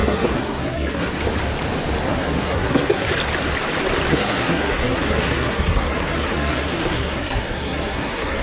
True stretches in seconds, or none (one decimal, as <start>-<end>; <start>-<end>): 1.1-2.1; 3.1-4.1